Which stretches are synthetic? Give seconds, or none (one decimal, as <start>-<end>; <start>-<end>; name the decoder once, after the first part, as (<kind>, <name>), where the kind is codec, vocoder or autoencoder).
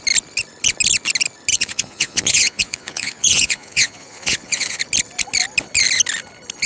1.5-4.8 (vocoder, Vocos)